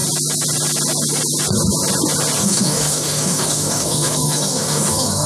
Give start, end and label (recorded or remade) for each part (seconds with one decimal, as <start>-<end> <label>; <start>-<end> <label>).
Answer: 0.0-2.4 recorded; 2.4-5.3 remade